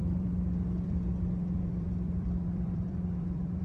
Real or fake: fake